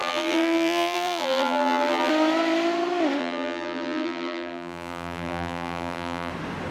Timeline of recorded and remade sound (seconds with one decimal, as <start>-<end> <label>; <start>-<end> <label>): 0.0-2.1 remade; 2.1-3.2 recorded; 3.2-6.3 remade; 6.3-6.7 recorded